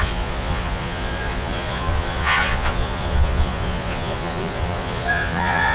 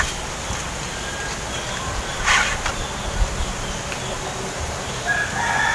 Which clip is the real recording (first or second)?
second